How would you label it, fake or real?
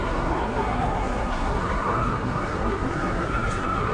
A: fake